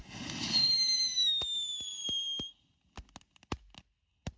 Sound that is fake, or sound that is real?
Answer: real